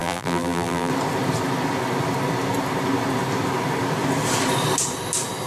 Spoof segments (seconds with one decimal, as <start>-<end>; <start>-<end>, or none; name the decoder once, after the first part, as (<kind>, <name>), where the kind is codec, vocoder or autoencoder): 0.0-0.9 (vocoder, BigVGAN v2)